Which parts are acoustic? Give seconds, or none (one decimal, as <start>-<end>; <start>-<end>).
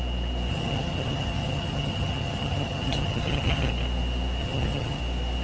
0.0-0.5; 3.7-4.4; 5.0-5.4